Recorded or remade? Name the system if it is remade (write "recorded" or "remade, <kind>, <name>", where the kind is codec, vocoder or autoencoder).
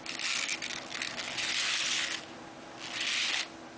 recorded